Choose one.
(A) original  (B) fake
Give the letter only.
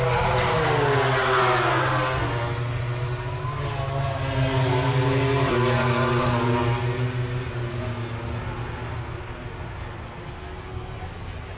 A